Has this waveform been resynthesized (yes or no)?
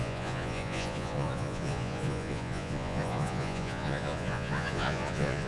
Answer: yes